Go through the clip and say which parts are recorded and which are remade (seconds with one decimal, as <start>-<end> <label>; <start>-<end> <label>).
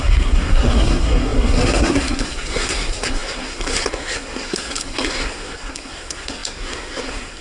0.0-7.4 remade